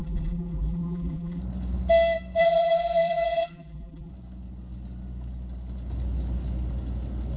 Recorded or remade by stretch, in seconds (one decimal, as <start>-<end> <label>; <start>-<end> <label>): 0.0-1.4 remade; 1.4-2.4 recorded; 2.4-4.1 remade; 4.1-7.4 recorded